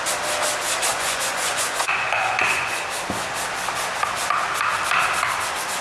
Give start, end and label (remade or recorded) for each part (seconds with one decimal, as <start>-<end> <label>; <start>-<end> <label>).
0.0-0.9 recorded; 0.9-2.8 remade; 2.8-5.8 recorded